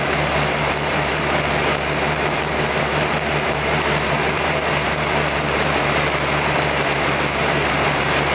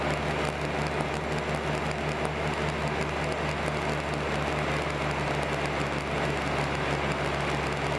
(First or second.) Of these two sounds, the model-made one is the first